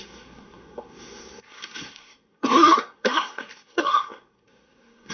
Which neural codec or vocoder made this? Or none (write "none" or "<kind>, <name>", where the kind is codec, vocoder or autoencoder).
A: codec, SNAC